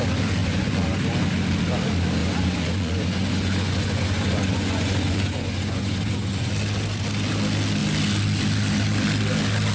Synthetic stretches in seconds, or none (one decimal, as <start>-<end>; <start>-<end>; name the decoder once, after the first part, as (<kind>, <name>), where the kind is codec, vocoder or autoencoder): 0.4-1.0 (vocoder, Vocos); 2.2-6.5

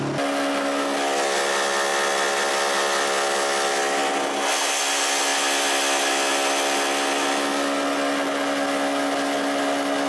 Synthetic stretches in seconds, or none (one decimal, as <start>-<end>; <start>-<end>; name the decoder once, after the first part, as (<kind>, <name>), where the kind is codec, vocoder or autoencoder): none

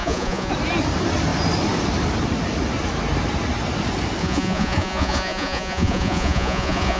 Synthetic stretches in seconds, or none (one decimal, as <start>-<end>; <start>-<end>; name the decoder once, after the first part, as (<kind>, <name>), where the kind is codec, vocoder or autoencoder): 0.0-0.5 (vocoder, Vocos); 4.2-7.0

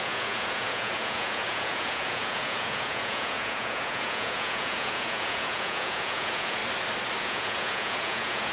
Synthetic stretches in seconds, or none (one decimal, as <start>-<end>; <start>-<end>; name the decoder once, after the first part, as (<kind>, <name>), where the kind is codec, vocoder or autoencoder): 0.0-6.6 (vocoder, Vocos); 7.2-8.5

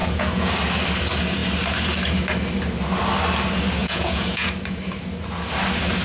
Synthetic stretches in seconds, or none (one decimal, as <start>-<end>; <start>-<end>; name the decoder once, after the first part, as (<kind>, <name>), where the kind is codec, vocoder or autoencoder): 0.0-0.5 (vocoder, Vocos); 3.8-4.5